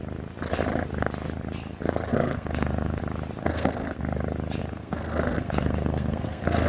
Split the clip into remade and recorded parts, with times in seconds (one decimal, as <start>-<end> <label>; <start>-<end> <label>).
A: 0.0-2.1 recorded; 2.1-3.0 remade; 3.0-3.4 recorded; 3.4-4.0 remade; 4.0-4.6 recorded; 4.6-6.7 remade